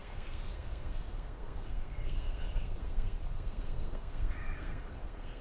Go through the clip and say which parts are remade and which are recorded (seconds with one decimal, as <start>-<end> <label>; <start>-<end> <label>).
0.0-5.4 remade